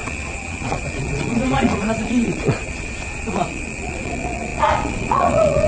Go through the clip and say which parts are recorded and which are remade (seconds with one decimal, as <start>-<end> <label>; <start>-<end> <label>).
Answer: 0.0-5.7 remade